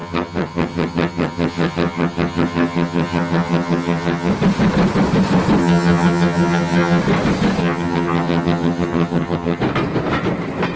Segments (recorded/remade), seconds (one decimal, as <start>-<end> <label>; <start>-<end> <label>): 0.0-4.3 remade; 4.3-5.6 recorded; 5.6-7.0 remade; 7.0-7.6 recorded; 7.6-9.6 remade; 9.6-10.8 recorded